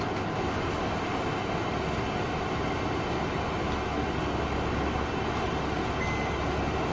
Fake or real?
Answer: real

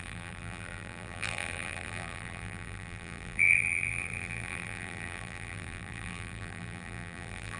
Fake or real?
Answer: fake